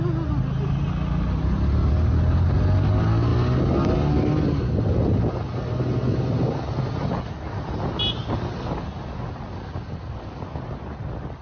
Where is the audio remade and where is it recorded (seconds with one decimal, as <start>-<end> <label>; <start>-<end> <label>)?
0.0-11.4 recorded